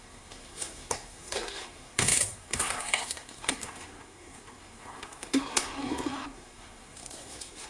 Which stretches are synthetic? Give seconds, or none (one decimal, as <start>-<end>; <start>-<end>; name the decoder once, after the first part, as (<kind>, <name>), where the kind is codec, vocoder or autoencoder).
0.0-7.7 (codec, SNAC)